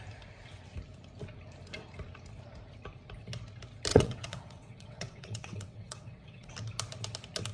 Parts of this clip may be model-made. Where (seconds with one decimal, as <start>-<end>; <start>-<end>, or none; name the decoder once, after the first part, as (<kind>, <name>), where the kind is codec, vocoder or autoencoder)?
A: 3.9-6.5 (vocoder, WaveNeXt)